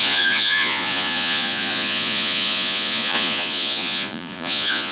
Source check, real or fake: fake